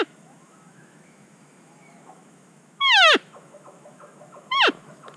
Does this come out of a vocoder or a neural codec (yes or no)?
yes